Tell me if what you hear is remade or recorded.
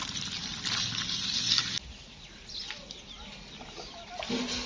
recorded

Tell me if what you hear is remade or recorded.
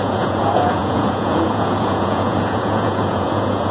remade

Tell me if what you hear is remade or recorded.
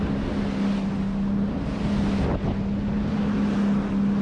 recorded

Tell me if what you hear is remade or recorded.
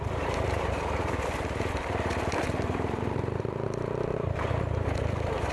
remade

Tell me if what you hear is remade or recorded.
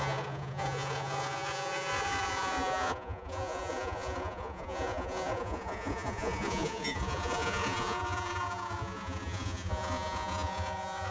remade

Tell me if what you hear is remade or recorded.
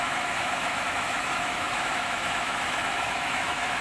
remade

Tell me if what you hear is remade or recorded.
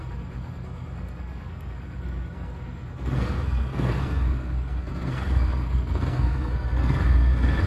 remade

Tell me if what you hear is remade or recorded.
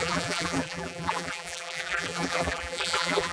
remade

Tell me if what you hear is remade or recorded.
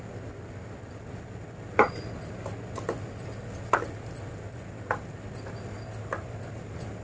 recorded